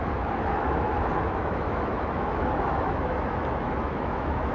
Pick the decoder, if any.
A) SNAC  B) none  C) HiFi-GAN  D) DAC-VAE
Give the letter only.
D